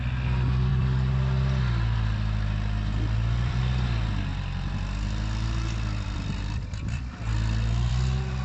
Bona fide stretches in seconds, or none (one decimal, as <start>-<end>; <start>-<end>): 0.0-0.7; 3.6-4.3; 7.9-8.4